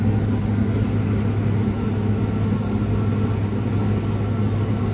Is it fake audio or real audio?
real